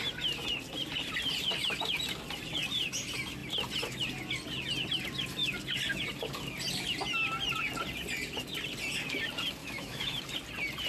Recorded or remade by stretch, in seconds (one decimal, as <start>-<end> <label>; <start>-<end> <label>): 0.0-9.6 recorded; 9.6-10.2 remade; 10.2-10.9 recorded